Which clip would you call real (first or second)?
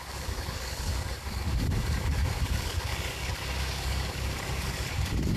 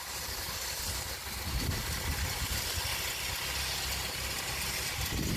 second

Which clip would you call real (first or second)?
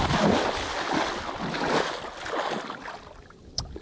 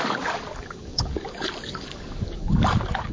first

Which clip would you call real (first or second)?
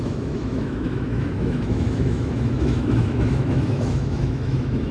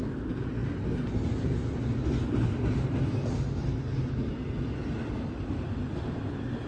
second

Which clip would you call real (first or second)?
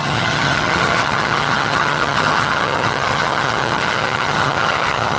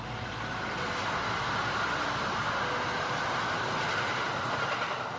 second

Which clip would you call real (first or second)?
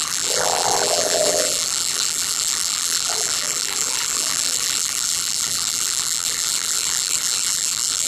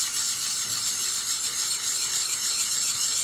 second